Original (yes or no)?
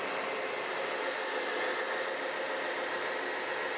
yes